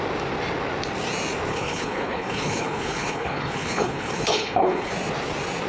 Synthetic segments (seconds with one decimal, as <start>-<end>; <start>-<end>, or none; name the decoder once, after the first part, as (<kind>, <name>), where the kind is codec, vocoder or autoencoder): 1.5-4.9 (codec, HILCodec)